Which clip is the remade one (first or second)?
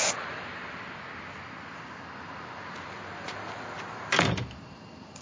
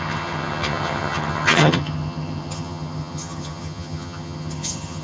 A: second